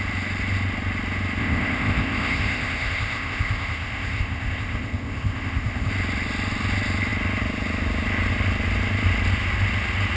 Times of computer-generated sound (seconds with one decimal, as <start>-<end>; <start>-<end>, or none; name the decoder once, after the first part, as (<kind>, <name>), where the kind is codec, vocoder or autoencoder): 1.4-5.9 (codec, ZipCodec)